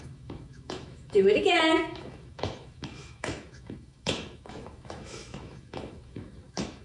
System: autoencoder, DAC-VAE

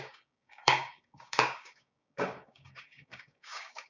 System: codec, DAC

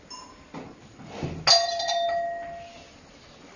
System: none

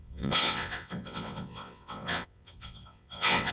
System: vocoder, WaveNeXt